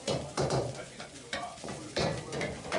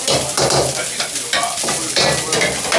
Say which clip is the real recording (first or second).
second